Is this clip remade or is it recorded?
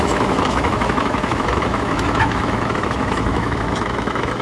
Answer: remade